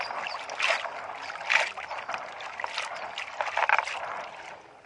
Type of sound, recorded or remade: recorded